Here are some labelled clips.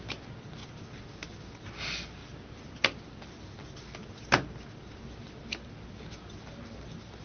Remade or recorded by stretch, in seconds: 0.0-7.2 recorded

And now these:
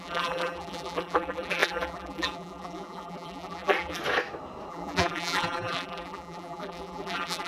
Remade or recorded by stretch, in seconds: 0.0-4.0 remade; 4.0-4.7 recorded; 4.7-7.5 remade

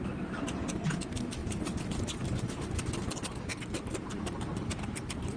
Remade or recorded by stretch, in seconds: 0.0-1.4 recorded; 1.4-2.9 remade; 2.9-3.5 recorded; 3.5-5.4 remade

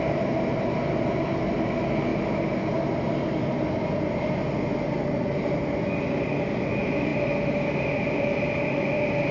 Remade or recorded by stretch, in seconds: 0.0-9.3 recorded

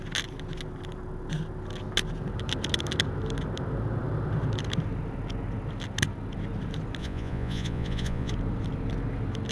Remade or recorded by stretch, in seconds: 0.0-7.0 recorded; 7.0-8.3 remade; 8.3-9.5 recorded

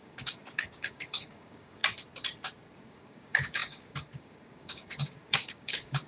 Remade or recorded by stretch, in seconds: 0.0-1.8 remade; 1.8-2.8 recorded; 2.8-6.1 remade

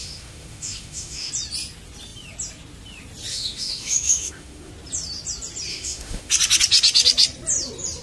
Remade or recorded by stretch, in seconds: 0.0-1.3 remade; 1.3-3.3 recorded; 3.3-4.7 remade; 4.7-5.7 recorded; 5.7-6.3 remade; 6.3-8.0 recorded

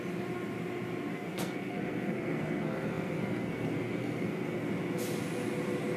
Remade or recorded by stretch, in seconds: 0.0-1.1 recorded; 1.1-4.7 remade; 4.7-6.0 recorded